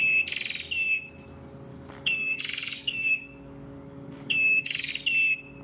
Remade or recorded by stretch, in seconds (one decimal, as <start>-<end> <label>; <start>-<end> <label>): 0.0-1.7 recorded; 1.7-4.9 remade; 4.9-5.6 recorded